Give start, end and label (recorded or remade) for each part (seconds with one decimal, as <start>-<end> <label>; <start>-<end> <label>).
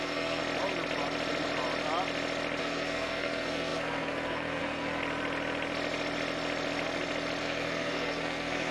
0.0-0.4 remade; 0.4-2.6 recorded; 2.6-5.0 remade; 5.0-7.4 recorded; 7.4-8.7 remade